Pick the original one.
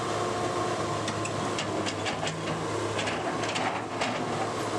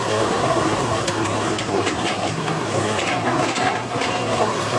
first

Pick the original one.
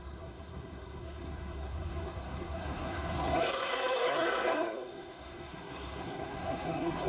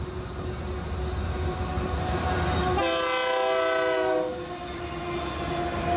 second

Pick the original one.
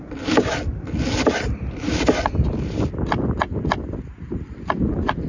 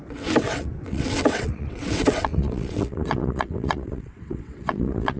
first